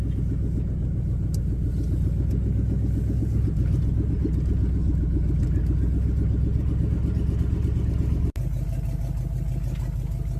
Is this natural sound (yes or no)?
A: yes